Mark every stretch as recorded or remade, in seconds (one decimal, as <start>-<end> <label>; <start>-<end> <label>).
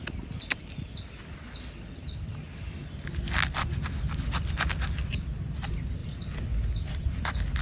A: 0.0-7.6 recorded